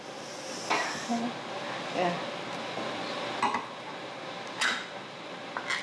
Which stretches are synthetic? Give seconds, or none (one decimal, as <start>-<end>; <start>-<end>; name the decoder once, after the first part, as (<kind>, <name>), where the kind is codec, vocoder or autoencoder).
none